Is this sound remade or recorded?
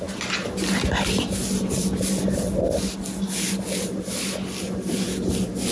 recorded